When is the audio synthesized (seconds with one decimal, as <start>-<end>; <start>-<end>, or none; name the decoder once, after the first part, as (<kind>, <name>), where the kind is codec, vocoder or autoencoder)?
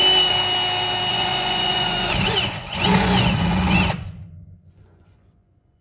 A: 1.1-5.8 (vocoder, Vocos)